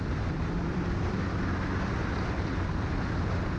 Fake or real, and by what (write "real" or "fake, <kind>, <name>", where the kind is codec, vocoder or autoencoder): fake, vocoder, BigVGAN v2